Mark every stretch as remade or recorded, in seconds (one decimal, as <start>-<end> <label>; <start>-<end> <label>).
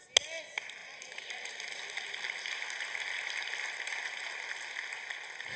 0.0-0.8 recorded; 0.8-4.2 remade; 4.2-5.6 recorded